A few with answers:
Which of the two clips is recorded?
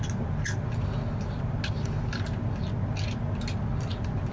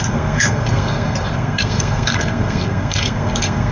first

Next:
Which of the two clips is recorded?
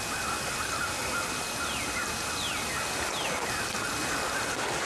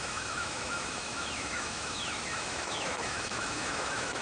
first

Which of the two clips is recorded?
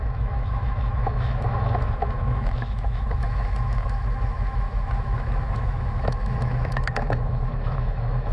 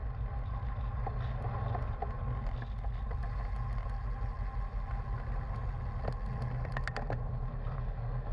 second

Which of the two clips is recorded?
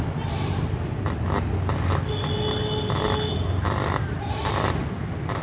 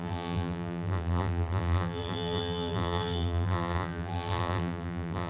first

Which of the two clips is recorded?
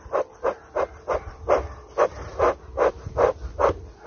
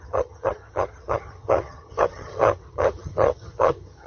first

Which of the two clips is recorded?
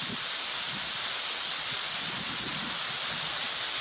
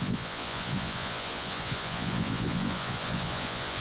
first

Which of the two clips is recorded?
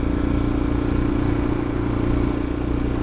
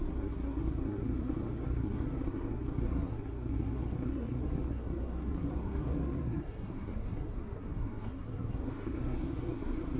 first